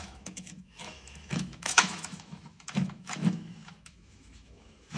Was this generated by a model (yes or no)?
yes